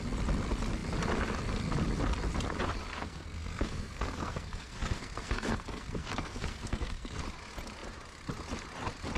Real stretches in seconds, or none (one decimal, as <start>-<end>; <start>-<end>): 0.0-2.9; 7.2-9.2